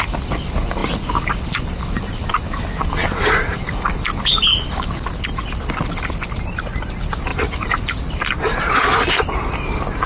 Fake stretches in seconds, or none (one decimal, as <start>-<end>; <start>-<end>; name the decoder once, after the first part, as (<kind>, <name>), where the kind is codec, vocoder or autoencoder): 3.0-3.9 (vocoder, BigVGAN v2); 7.3-8.0